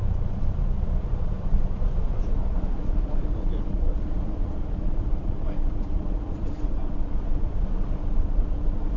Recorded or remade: remade